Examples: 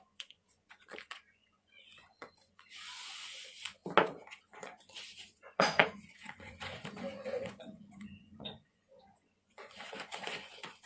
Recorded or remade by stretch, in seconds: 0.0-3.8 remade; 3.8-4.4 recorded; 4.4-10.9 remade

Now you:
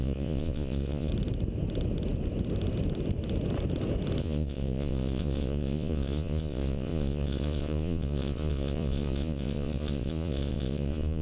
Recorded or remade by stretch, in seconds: 0.0-1.1 remade; 1.1-4.2 recorded; 4.2-11.2 remade

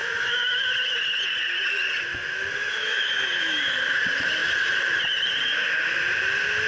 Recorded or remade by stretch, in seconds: 0.0-0.7 remade; 0.7-2.1 recorded; 2.1-3.7 remade; 3.7-6.7 recorded

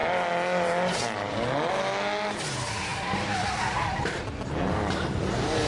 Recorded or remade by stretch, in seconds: 0.0-5.7 recorded

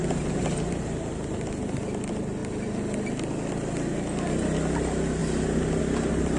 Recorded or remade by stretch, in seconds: 0.0-6.4 recorded

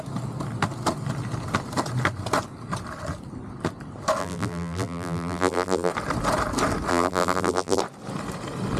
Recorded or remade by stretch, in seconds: 0.0-4.2 recorded; 4.2-5.9 remade; 5.9-6.9 recorded; 6.9-7.8 remade; 7.8-8.8 recorded

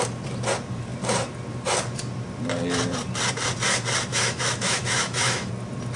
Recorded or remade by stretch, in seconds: 0.0-4.1 recorded; 4.1-5.5 remade; 5.5-6.0 recorded

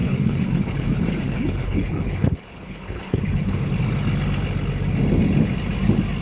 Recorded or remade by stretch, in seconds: 0.0-3.7 remade; 3.7-6.2 recorded